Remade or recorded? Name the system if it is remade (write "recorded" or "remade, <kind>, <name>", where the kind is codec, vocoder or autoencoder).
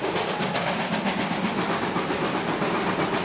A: recorded